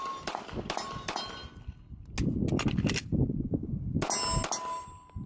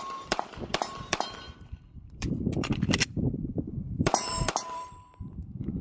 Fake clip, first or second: second